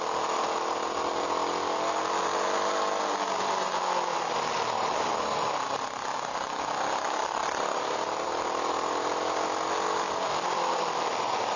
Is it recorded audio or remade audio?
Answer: recorded